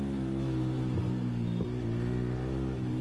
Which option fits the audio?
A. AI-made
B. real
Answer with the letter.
B